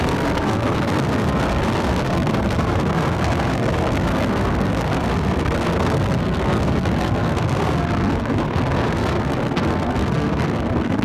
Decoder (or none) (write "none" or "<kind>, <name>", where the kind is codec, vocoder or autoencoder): codec, SNAC